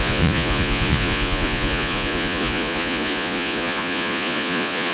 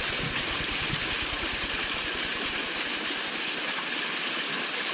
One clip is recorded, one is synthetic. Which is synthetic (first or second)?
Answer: first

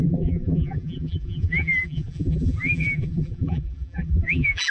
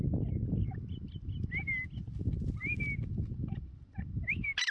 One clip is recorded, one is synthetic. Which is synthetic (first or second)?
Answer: first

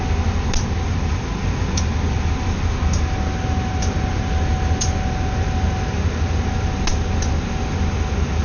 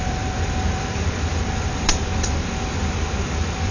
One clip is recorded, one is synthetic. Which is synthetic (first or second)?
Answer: second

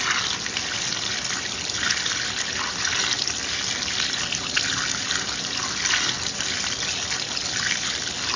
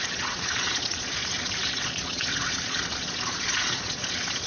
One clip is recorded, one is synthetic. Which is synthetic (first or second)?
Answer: second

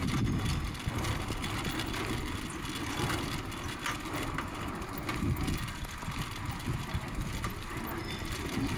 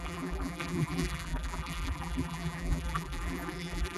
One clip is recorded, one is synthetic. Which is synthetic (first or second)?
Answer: second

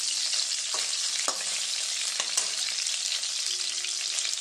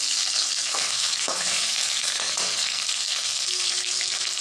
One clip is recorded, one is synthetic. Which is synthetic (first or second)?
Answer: second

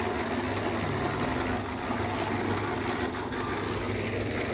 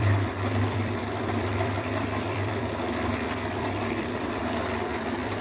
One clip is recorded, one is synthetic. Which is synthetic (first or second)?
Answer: second